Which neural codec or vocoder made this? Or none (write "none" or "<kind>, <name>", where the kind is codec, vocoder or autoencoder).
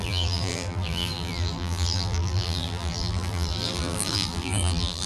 vocoder, BigVGAN v2